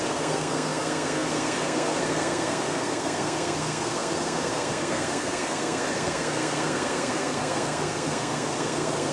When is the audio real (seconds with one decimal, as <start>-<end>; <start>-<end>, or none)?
none